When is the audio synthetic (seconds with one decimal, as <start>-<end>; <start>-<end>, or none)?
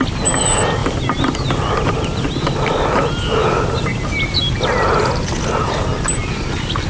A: none